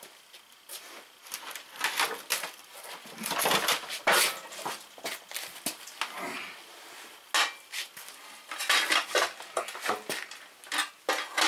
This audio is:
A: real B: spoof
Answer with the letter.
A